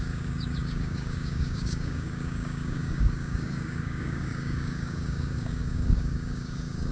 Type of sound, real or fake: fake